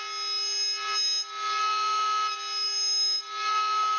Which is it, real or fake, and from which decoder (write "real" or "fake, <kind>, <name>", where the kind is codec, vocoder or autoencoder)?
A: real